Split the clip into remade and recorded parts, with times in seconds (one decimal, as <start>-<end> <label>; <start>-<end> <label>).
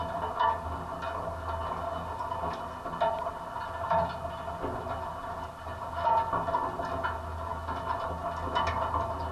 0.0-9.3 recorded